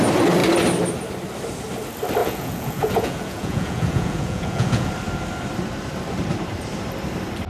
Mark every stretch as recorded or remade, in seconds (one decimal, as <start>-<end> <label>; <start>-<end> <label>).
0.0-2.2 recorded; 2.2-4.9 remade; 4.9-7.5 recorded